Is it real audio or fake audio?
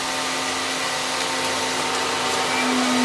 real